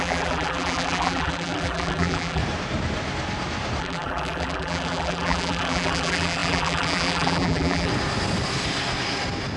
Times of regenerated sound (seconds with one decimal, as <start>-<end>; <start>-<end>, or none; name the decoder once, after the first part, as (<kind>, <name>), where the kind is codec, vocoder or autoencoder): 0.0-2.4 (vocoder, BigVGAN v2); 3.8-7.9